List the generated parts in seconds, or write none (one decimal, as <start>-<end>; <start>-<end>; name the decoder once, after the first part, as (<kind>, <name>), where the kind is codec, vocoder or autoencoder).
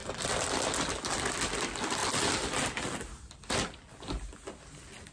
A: none